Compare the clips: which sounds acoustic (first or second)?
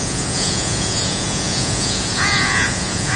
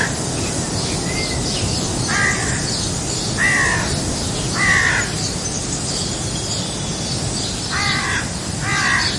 second